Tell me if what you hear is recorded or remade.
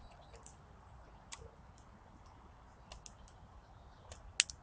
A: recorded